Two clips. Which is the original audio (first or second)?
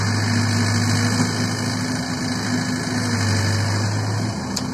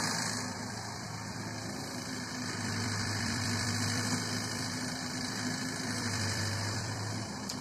first